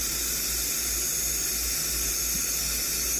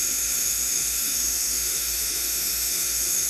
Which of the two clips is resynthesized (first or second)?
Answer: second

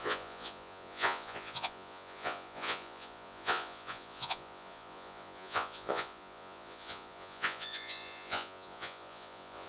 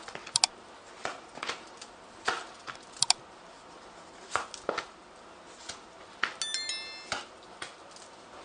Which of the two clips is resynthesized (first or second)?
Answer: first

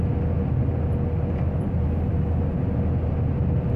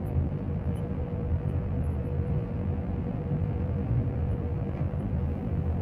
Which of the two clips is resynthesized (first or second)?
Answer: second